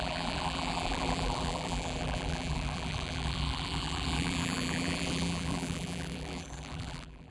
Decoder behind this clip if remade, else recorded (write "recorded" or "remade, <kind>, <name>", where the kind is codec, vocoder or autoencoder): remade, vocoder, BigVGAN v2